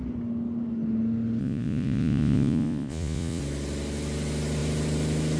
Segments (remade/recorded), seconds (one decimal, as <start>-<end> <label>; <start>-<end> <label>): 0.0-1.4 recorded; 1.4-3.4 remade; 3.4-5.4 recorded